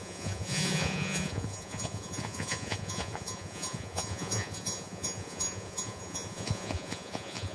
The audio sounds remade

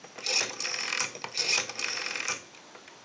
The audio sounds recorded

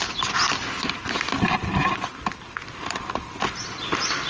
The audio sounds recorded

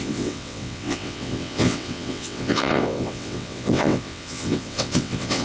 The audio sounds remade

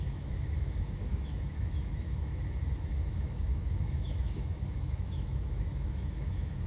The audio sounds remade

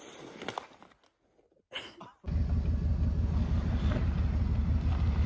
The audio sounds recorded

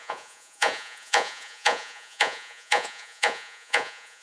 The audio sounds remade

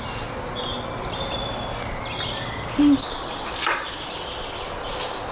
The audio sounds recorded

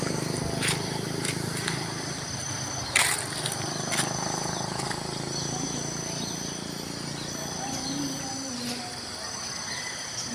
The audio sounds recorded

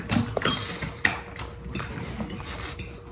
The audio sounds recorded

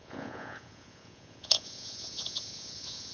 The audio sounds remade